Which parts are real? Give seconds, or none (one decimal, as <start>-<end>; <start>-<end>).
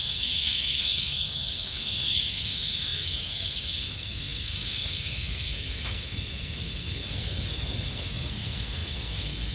none